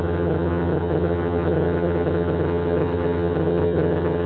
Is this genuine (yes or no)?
no